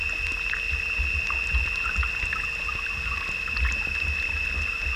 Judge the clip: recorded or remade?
recorded